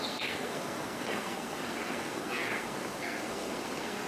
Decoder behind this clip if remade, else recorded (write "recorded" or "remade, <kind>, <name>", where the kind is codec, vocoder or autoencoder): remade, codec, SNAC